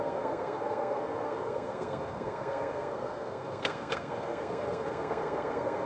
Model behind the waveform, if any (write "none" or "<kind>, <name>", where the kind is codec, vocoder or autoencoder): codec, SNAC